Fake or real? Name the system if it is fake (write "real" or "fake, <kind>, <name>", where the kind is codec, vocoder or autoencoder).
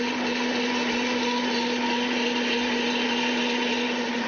real